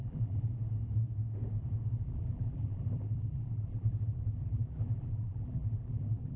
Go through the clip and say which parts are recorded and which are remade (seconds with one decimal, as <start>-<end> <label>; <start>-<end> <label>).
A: 0.0-0.5 remade; 0.5-1.9 recorded; 1.9-6.4 remade